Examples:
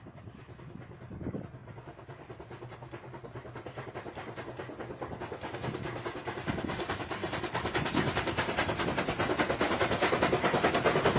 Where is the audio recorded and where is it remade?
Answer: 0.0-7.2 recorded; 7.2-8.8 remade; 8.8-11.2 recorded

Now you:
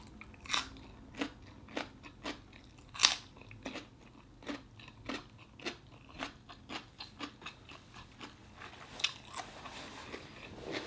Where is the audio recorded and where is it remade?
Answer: 0.0-10.9 recorded

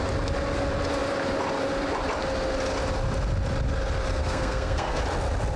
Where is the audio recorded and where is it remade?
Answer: 0.0-4.1 recorded; 4.1-5.0 remade; 5.0-5.6 recorded

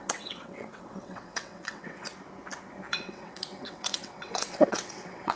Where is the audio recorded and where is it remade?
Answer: 0.0-2.1 remade; 2.1-2.9 recorded; 2.9-5.4 remade

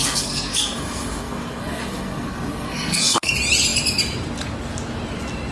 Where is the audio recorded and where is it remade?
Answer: 0.0-3.3 remade; 3.3-5.5 recorded

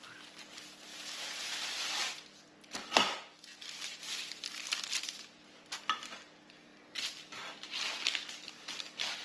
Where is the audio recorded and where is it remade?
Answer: 0.0-9.2 recorded